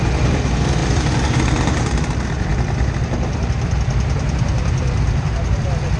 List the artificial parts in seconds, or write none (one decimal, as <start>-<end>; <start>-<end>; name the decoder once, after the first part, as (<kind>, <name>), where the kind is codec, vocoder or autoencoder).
none